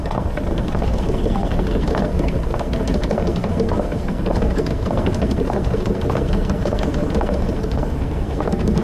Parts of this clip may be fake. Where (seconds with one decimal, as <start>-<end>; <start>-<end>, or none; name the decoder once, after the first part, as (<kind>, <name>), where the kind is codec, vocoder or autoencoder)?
0.0-8.8 (codec, SNAC)